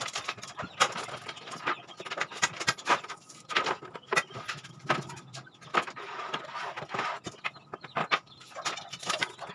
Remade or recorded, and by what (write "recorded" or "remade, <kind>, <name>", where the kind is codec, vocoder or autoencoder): recorded